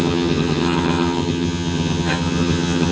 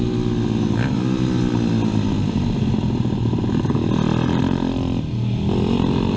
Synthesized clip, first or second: first